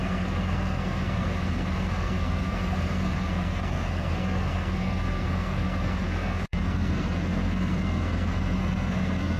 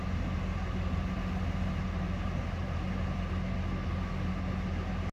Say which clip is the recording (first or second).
second